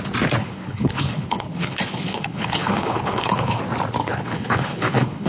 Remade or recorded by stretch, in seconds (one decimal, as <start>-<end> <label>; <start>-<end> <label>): 0.0-0.4 recorded; 0.4-3.6 remade; 3.6-4.0 recorded; 4.0-5.3 remade